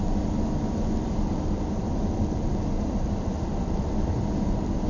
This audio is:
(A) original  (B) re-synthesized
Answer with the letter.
A